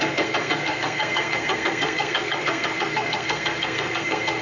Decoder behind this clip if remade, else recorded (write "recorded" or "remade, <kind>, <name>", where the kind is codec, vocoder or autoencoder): remade, codec, SNAC